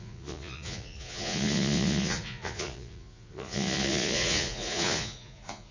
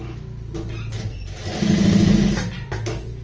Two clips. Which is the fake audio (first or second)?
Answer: first